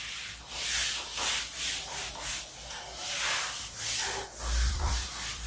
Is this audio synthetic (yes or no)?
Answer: yes